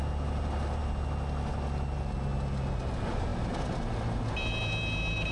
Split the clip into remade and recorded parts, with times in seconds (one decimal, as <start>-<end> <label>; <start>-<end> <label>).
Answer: 0.0-5.3 recorded

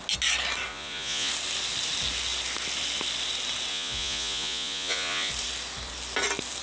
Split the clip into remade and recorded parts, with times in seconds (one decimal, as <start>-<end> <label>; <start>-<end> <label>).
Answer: 0.0-0.7 recorded; 0.7-1.3 remade; 1.3-3.7 recorded; 3.7-5.3 remade; 5.3-6.6 recorded

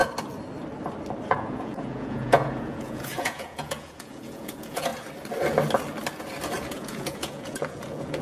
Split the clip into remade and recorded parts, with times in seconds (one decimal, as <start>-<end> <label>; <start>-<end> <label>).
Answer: 0.0-1.3 recorded; 1.3-4.9 remade; 4.9-6.6 recorded; 6.6-8.2 remade

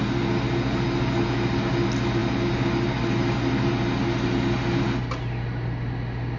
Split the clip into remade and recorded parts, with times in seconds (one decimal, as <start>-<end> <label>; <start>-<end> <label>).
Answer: 0.0-6.4 recorded

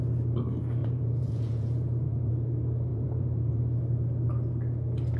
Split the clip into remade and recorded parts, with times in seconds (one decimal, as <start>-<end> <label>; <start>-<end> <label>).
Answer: 0.0-0.8 recorded; 0.8-2.3 remade; 2.3-2.9 recorded; 2.9-3.6 remade; 3.6-5.2 recorded

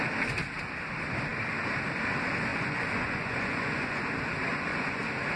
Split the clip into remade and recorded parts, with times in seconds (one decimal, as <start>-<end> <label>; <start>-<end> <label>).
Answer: 0.0-2.5 recorded; 2.5-4.0 remade; 4.0-4.5 recorded; 4.5-5.0 remade; 5.0-5.4 recorded